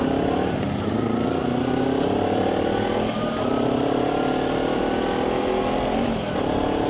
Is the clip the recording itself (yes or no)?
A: yes